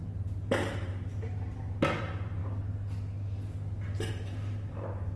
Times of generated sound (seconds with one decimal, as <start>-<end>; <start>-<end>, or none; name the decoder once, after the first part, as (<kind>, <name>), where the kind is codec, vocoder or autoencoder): 0.0-1.1 (vocoder, BigVGAN v2); 2.0-2.4; 4.1-5.2